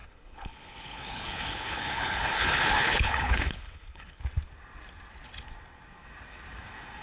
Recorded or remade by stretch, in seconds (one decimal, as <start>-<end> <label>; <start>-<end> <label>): 0.0-4.2 remade; 4.2-7.0 recorded